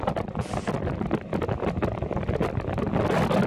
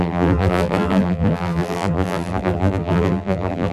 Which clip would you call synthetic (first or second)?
second